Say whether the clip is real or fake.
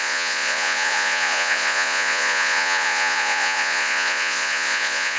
fake